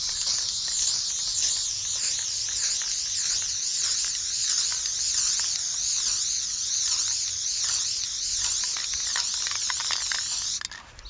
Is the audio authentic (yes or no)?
yes